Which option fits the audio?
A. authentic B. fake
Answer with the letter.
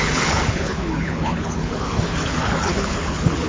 B